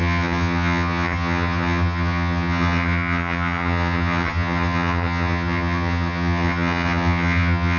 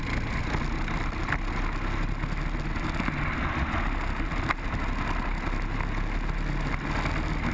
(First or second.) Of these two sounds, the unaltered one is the second